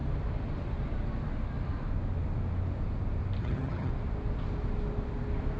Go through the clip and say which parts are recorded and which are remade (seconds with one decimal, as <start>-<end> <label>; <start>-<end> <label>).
0.0-3.4 recorded; 3.4-3.9 remade; 3.9-5.6 recorded